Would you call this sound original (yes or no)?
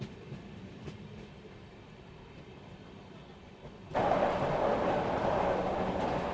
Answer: yes